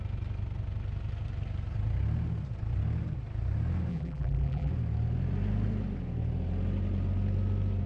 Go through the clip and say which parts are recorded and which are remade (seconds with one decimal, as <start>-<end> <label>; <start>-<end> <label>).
0.0-3.9 recorded; 3.9-4.7 remade; 4.7-7.9 recorded